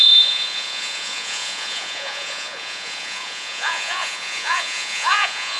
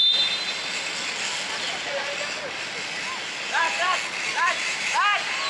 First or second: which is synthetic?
first